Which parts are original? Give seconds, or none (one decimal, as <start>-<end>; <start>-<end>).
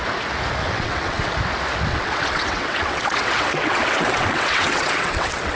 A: 0.0-0.6; 1.3-1.9